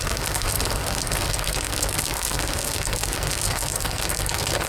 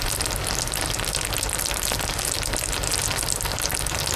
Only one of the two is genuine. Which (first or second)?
second